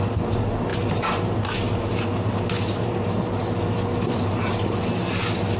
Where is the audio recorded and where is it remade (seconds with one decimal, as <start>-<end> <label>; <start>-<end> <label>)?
0.0-5.6 recorded